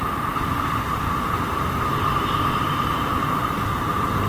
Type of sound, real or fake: fake